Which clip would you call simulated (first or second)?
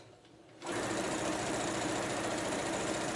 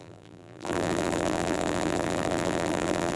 second